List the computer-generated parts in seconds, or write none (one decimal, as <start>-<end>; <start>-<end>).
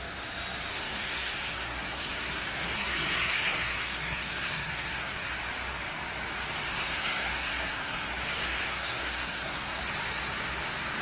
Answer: 0.7-5.3; 6.7-9.8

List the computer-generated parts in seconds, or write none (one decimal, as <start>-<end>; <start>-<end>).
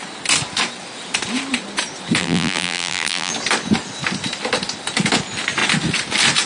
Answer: 2.2-3.3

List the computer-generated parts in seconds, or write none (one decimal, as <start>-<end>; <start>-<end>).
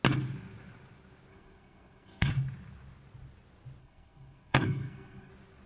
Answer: 1.3-2.3; 3.8-5.3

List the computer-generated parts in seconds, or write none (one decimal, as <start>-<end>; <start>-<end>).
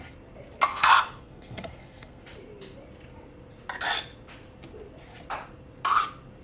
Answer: 0.7-2.2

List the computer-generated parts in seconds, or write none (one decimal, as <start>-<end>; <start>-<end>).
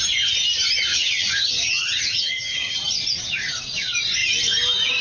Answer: 0.9-2.9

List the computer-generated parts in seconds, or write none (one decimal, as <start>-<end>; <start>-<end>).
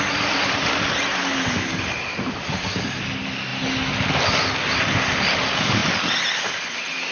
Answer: none